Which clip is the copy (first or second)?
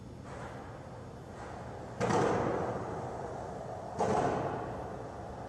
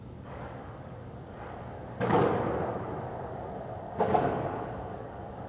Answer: second